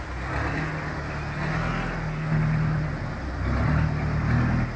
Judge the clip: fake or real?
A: real